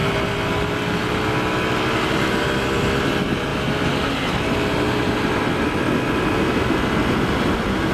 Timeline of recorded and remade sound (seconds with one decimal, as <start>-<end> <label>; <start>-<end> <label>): 0.0-7.9 recorded